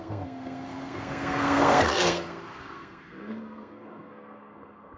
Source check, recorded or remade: remade